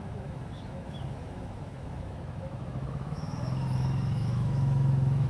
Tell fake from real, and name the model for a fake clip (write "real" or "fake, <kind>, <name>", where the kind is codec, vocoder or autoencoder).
fake, autoencoder, DAC-VAE